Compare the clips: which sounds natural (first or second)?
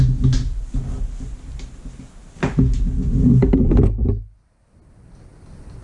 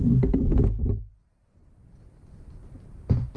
first